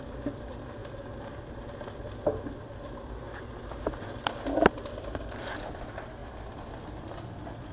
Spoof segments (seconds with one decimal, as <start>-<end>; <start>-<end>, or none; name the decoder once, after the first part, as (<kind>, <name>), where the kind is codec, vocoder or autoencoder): 0.0-7.7 (vocoder, BigVGAN v2)